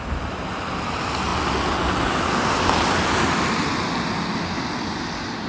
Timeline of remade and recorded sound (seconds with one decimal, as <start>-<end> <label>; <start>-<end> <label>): 0.0-5.5 recorded